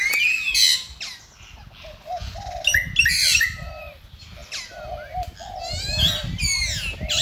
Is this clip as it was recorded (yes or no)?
yes